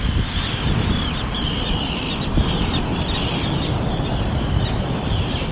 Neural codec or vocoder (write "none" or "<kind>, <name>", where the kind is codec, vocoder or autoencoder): none